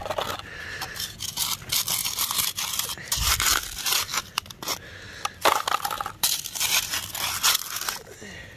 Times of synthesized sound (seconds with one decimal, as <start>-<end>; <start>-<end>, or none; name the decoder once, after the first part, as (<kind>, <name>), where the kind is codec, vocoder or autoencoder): 2.0-3.3 (vocoder, BigVGAN v2)